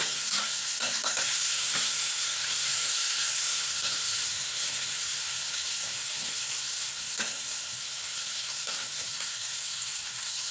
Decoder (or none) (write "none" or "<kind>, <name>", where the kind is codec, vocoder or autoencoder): codec, SNAC